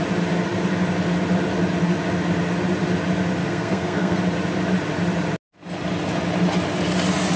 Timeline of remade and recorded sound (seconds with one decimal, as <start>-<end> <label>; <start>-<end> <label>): 0.0-3.4 recorded; 3.4-4.2 remade; 4.2-7.4 recorded